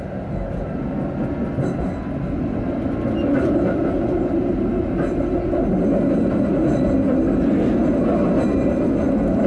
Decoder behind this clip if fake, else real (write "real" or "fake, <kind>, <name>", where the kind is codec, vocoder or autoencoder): real